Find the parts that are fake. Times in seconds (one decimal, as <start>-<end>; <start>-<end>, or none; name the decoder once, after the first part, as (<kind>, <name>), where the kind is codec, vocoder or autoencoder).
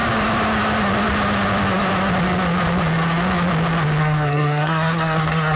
4.0-5.6 (codec, SNAC)